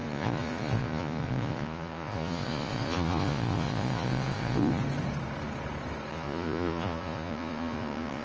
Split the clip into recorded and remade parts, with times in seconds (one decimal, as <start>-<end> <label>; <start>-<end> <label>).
0.0-4.8 remade; 4.8-6.1 recorded; 6.1-8.2 remade